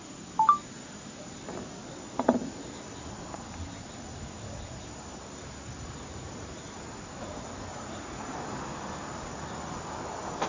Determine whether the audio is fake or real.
real